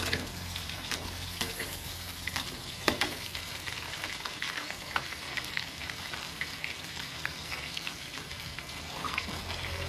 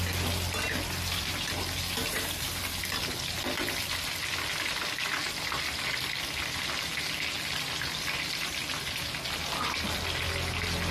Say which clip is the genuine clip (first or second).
second